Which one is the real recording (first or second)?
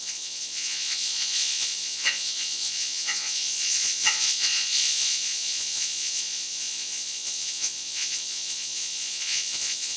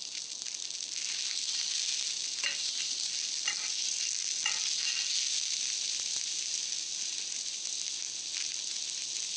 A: second